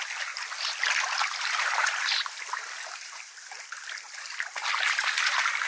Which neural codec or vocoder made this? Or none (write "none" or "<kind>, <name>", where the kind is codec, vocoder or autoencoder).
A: none